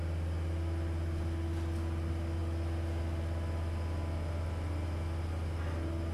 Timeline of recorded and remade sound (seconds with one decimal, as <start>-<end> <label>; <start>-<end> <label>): 0.0-6.1 recorded

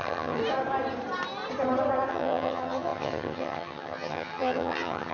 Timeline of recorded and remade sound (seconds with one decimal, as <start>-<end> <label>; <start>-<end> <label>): 0.0-0.4 remade; 0.4-2.1 recorded; 2.1-5.1 remade